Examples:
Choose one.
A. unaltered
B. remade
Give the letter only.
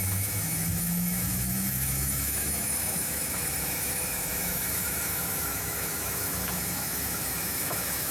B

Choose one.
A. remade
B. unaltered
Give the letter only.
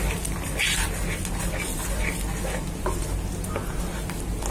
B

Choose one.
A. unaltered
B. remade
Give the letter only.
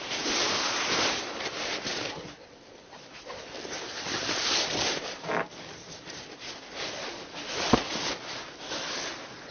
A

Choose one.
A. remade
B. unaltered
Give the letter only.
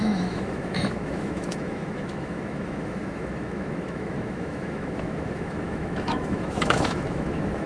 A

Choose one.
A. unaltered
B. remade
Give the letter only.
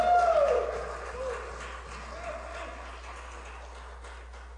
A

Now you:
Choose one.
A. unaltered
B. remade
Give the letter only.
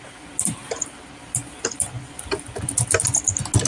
A